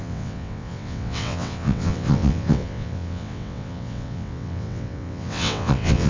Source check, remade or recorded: remade